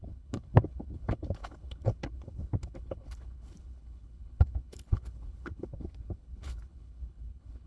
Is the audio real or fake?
fake